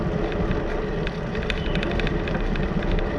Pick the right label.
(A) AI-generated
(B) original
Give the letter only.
B